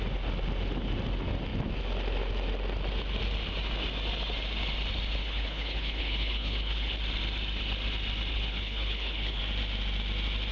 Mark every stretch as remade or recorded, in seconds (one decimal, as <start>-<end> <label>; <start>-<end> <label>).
0.0-5.2 recorded; 5.2-7.0 remade; 7.0-8.3 recorded; 8.3-9.4 remade; 9.4-10.5 recorded